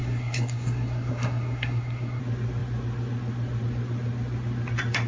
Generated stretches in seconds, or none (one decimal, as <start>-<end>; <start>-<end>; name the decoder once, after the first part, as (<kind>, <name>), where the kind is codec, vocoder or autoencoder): 0.0-2.2 (codec, SNAC)